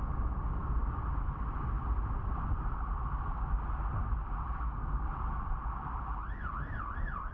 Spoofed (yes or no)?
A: no